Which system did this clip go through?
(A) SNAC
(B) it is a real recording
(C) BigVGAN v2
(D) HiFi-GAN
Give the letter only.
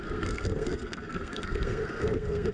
A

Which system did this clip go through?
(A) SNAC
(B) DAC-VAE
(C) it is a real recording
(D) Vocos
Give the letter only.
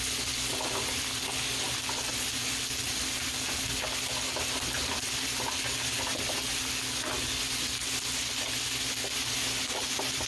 C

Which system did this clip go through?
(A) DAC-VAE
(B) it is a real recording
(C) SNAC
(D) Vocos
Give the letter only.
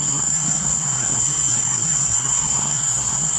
C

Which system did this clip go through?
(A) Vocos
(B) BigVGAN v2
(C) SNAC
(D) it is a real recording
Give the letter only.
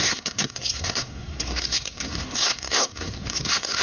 C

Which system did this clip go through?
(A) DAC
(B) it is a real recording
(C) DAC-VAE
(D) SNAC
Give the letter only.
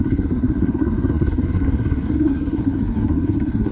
D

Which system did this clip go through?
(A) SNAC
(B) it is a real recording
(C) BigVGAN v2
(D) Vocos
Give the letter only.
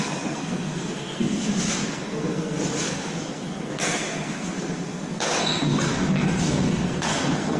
A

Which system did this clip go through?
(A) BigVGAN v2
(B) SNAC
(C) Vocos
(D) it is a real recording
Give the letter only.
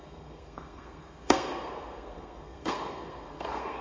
B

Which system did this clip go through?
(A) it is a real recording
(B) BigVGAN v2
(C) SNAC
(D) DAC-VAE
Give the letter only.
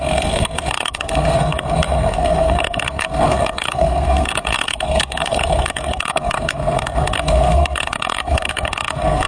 C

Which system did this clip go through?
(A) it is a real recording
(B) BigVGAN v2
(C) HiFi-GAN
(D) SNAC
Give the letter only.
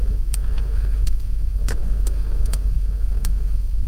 D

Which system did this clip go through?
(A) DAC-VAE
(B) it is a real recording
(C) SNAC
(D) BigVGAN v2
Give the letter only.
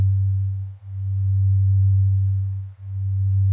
C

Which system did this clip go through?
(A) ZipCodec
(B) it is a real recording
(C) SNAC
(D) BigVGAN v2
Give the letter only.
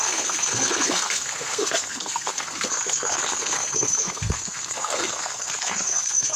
C